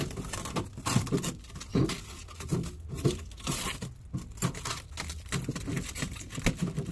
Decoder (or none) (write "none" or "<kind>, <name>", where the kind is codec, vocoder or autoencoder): none